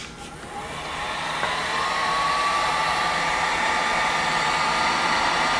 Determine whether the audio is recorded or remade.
recorded